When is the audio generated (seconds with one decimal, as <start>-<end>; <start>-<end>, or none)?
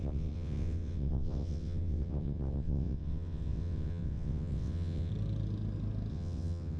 0.0-5.1; 6.1-6.8